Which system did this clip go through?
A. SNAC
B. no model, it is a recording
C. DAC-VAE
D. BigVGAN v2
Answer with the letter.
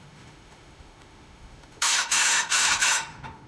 C